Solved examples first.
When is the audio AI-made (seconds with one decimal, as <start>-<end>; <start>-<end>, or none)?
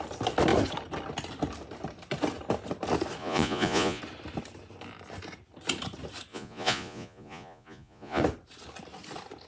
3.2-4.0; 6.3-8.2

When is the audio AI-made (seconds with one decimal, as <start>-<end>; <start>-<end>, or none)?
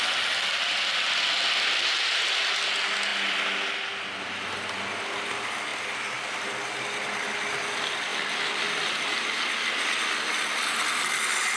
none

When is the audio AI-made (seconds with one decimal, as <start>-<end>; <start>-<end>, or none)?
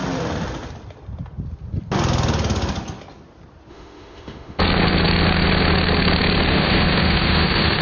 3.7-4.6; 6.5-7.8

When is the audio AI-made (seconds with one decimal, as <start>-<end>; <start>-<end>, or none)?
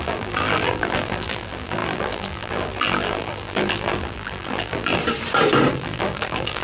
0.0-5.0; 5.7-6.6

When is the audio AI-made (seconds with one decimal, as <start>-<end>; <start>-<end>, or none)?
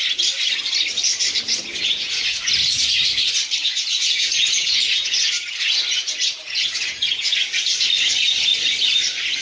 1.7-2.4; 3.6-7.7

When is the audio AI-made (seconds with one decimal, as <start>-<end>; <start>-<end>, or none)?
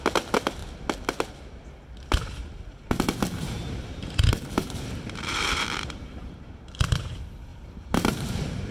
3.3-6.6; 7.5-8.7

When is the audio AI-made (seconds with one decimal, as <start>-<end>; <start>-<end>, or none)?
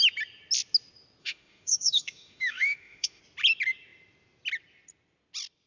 1.2-3.2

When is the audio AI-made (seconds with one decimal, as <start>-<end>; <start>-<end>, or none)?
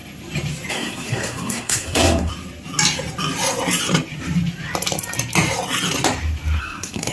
0.7-2.3; 6.6-7.1